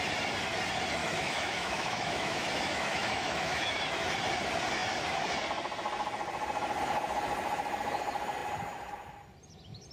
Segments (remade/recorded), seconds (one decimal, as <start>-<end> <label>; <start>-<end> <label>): 0.0-1.0 recorded; 1.0-3.8 remade; 3.8-9.9 recorded